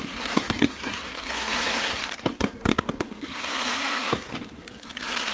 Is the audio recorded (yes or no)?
no